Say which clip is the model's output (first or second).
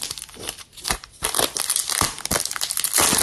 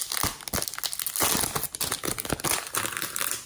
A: first